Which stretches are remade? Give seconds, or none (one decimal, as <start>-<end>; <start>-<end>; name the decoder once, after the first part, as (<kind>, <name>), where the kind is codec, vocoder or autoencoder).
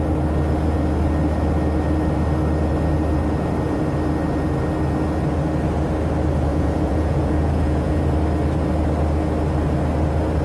6.5-8.0 (vocoder, Vocos)